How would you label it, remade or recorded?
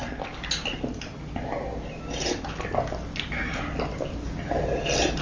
recorded